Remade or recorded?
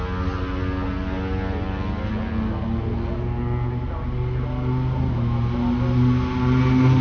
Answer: recorded